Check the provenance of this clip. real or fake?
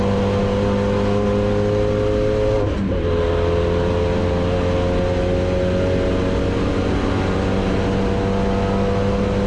real